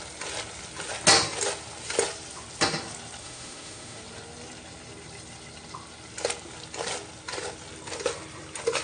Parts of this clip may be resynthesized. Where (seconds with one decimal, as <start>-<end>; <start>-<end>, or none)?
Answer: 3.2-4.0